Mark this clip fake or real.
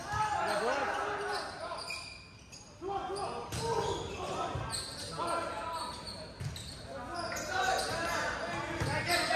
real